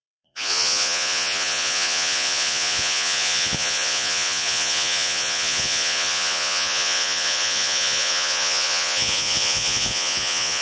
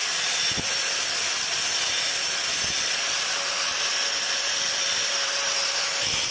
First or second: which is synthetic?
first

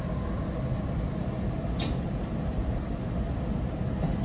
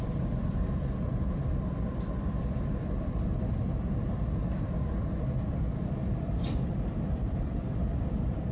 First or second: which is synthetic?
second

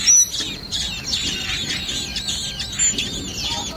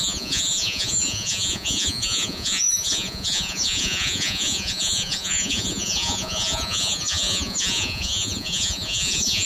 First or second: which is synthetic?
second